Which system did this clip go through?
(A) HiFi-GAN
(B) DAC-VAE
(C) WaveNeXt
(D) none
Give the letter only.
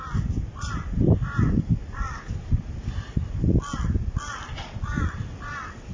D